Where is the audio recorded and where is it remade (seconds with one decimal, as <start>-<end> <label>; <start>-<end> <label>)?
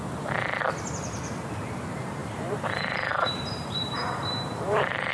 0.0-2.2 recorded; 2.2-5.1 remade